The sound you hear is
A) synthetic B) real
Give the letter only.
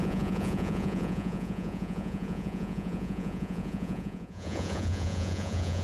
A